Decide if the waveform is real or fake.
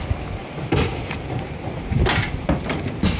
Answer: fake